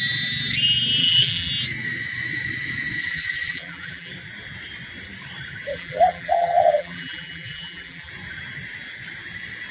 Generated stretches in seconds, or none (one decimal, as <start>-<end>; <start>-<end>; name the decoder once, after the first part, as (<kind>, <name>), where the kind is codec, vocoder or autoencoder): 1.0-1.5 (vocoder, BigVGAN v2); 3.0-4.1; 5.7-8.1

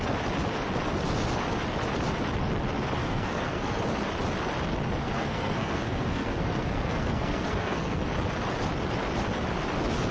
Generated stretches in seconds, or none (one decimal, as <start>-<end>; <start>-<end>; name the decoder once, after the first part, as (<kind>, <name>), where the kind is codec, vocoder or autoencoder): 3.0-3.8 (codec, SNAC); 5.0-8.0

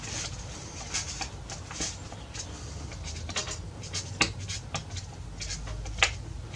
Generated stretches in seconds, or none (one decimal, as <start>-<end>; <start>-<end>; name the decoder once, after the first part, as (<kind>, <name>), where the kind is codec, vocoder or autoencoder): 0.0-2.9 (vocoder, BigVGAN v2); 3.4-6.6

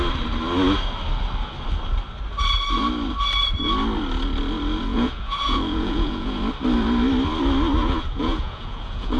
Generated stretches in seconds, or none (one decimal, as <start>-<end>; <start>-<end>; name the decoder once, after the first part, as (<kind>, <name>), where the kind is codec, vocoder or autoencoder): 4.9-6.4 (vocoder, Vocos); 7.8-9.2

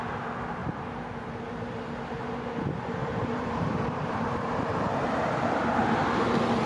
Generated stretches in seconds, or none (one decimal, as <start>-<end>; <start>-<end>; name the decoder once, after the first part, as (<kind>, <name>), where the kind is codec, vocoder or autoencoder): 0.6-1.4 (vocoder, BigVGAN v2); 3.0-5.6

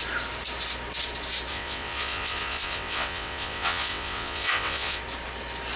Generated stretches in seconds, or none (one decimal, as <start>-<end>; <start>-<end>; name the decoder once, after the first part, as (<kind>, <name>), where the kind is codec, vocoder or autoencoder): 1.5-5.0 (vocoder, WaveNeXt)

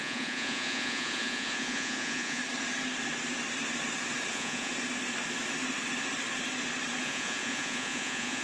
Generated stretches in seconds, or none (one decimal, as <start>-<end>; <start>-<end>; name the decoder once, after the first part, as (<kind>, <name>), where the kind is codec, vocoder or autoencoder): 0.0-2.4 (vocoder, Vocos); 4.3-4.7; 7.0-8.4